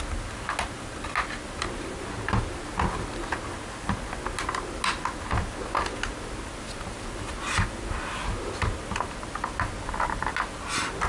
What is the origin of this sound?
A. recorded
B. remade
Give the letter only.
A